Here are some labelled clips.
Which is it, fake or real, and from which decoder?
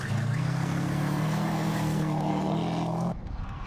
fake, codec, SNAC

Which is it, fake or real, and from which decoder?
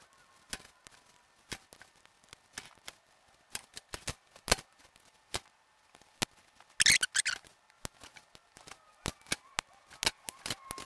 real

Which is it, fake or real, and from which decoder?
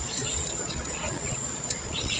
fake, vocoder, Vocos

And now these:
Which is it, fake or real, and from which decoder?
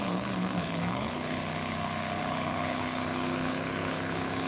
fake, codec, HILCodec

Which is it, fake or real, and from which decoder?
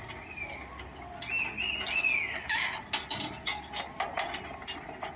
real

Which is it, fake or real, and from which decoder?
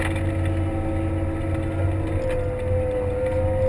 real